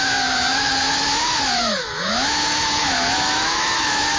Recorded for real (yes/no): no